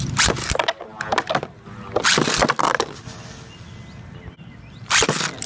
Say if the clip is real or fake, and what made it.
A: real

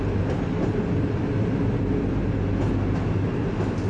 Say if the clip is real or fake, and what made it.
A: real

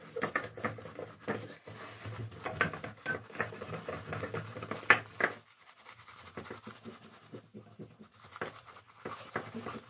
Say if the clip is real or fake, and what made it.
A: real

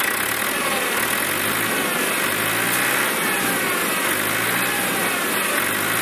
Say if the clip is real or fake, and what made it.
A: real